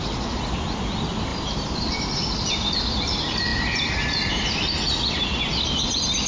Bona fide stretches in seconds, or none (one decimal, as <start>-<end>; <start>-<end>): 0.0-1.3; 2.6-6.3